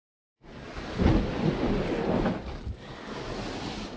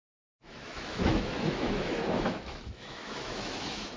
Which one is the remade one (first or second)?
second